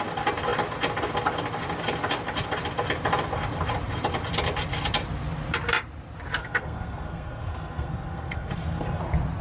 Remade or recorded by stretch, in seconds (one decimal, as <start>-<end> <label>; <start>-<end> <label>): 0.0-6.4 recorded; 6.4-9.0 remade; 9.0-9.4 recorded